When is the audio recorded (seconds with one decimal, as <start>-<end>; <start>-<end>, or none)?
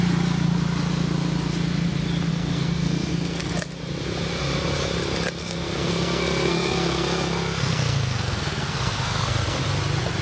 0.0-2.3; 3.5-5.4; 9.6-10.2